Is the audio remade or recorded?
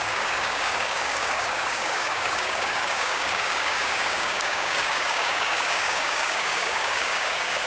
remade